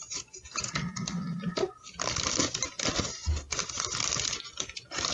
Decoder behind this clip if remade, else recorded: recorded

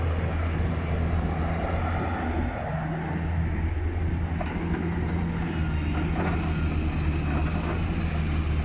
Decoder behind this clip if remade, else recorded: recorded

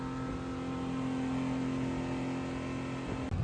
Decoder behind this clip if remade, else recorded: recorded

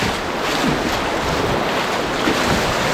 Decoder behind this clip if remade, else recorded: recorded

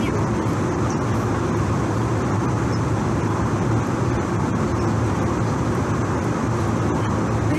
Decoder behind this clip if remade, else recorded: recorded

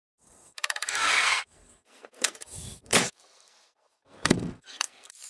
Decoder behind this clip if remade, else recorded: remade, codec, SNAC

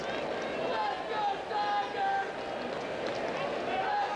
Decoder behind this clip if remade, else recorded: recorded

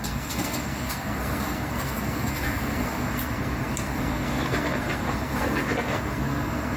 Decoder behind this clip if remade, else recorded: remade, codec, SNAC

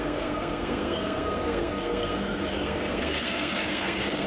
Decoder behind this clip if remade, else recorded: remade, codec, SNAC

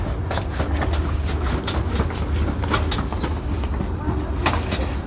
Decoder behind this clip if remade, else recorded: recorded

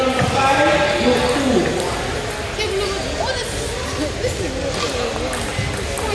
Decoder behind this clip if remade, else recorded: recorded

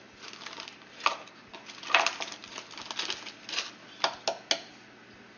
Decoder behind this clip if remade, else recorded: recorded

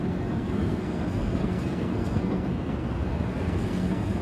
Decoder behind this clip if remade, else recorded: remade, codec, SNAC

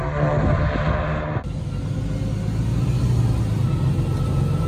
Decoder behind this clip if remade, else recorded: recorded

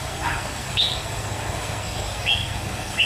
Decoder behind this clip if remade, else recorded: remade, codec, SNAC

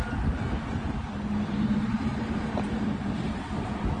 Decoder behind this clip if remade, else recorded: recorded